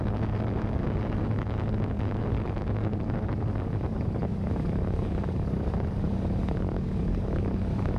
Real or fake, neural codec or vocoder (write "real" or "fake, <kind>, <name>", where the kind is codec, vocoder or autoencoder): fake, codec, DAC